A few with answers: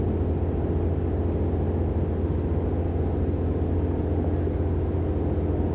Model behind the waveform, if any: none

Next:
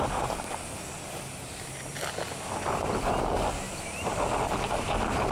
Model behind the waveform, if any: none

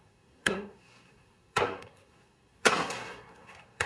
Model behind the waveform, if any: codec, SNAC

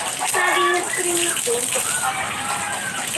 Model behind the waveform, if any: none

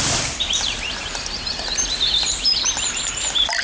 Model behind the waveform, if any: vocoder, BigVGAN v2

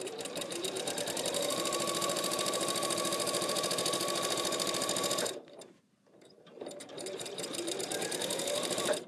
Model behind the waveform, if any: vocoder, BigVGAN v2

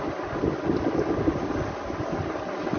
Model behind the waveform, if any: none